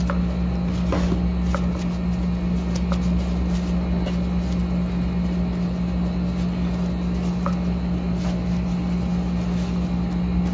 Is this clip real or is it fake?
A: real